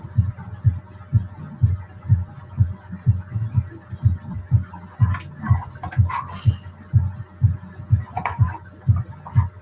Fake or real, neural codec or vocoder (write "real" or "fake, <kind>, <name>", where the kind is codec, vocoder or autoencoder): real